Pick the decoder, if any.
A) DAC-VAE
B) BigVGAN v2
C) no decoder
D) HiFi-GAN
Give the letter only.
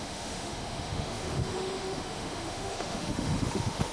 A